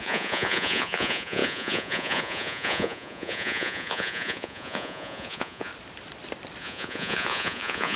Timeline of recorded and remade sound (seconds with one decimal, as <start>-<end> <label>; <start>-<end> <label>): 0.0-5.7 remade; 5.7-6.6 recorded; 6.6-8.0 remade